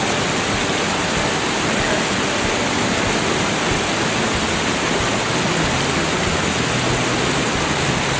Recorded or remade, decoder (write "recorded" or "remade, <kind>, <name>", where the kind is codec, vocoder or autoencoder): recorded